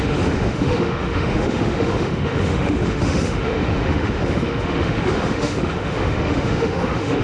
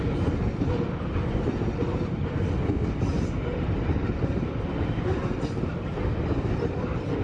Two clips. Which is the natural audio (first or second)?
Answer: second